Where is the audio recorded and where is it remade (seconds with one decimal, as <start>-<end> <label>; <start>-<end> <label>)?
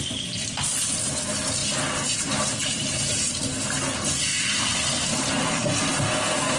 0.0-6.6 recorded